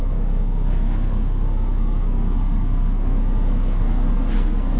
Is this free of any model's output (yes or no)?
no